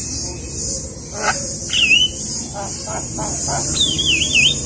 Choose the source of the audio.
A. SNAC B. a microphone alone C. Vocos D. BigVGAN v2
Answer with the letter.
B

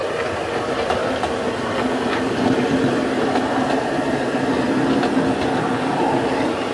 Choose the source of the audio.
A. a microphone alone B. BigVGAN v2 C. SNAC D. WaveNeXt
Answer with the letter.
A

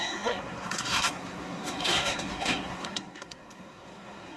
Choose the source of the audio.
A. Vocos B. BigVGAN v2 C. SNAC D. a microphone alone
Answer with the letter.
C